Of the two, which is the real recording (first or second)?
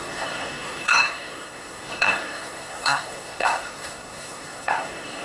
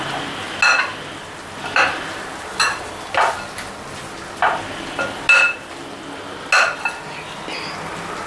second